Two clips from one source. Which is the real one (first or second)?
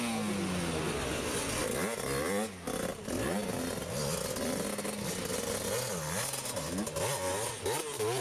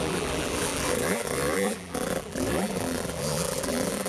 first